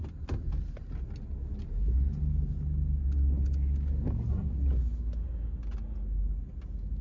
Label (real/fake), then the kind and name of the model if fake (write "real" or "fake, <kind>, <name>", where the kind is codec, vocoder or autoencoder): real